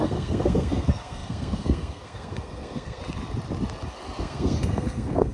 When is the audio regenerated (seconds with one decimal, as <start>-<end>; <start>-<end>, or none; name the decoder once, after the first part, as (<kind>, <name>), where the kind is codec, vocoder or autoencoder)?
0.0-3.0 (codec, SNAC); 4.2-5.3